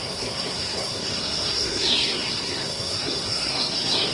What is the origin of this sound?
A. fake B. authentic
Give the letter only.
A